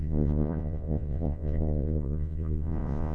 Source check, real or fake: fake